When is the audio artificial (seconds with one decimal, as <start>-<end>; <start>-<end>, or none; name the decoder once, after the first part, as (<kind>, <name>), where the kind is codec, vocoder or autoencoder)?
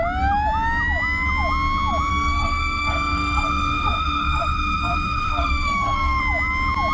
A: 2.1-6.2 (codec, SNAC)